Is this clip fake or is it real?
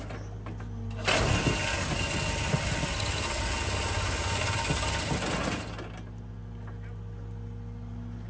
real